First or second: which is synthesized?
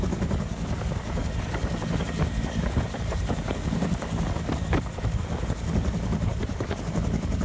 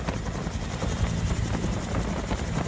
first